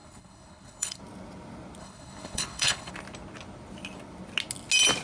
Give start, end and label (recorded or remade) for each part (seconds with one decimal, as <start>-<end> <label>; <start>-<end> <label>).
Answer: 0.0-1.0 remade; 1.0-1.8 recorded; 1.8-2.9 remade; 2.9-5.0 recorded

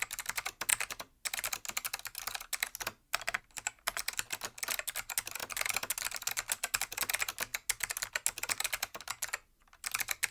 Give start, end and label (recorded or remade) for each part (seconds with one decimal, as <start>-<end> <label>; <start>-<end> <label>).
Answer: 0.0-10.3 recorded

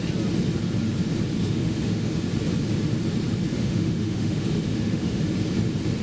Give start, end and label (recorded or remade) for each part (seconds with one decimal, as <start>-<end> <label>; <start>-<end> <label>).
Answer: 0.0-1.4 recorded; 1.4-2.2 remade; 2.2-3.5 recorded; 3.5-5.2 remade; 5.2-6.0 recorded

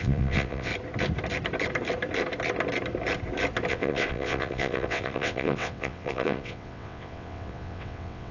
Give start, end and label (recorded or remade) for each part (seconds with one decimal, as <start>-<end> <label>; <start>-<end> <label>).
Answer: 0.0-0.7 remade; 0.7-3.7 recorded; 3.7-8.3 remade